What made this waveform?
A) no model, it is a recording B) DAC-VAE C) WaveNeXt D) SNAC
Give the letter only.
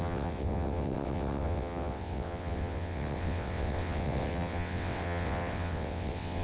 C